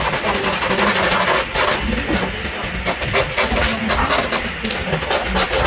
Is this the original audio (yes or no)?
yes